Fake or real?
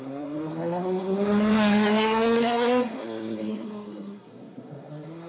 fake